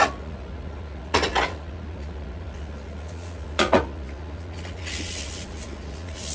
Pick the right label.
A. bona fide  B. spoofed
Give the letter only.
B